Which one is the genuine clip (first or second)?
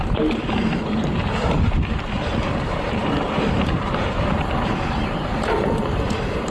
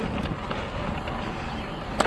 second